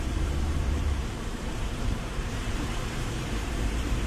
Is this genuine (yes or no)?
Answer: no